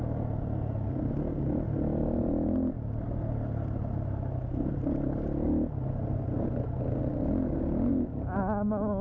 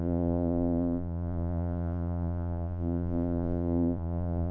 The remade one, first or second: second